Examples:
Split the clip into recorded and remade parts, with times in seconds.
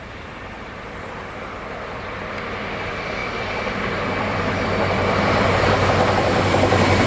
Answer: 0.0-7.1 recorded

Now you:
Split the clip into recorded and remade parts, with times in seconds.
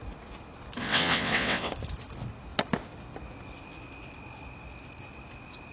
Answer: 0.0-0.8 recorded; 0.8-1.7 remade; 1.7-5.7 recorded